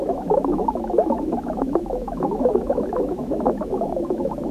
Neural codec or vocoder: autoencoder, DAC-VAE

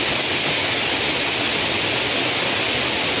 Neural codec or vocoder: none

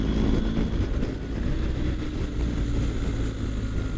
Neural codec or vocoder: none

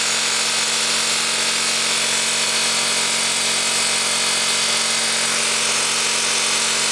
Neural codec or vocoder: none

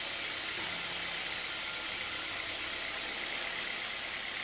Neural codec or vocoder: none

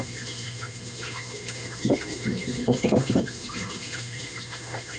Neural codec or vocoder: autoencoder, DAC-VAE